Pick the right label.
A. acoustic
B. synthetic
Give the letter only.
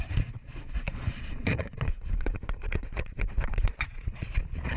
B